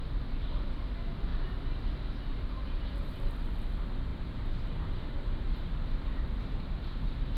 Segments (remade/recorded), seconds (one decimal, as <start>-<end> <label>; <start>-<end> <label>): 0.0-2.3 recorded; 2.3-3.4 remade; 3.4-4.1 recorded; 4.1-7.4 remade